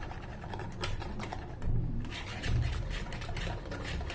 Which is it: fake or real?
real